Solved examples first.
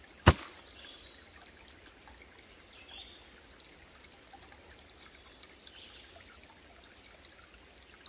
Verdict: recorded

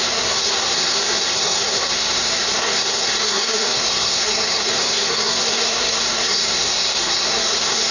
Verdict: remade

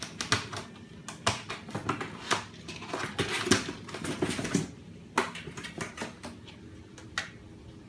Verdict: recorded